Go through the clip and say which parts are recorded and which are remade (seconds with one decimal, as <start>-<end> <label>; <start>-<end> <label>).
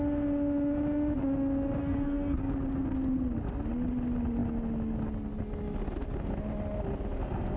0.0-1.8 recorded; 1.8-2.4 remade; 2.4-7.6 recorded